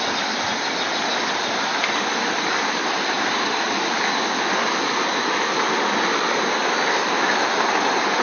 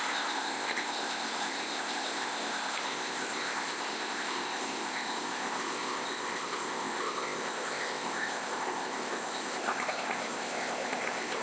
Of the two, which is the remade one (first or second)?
second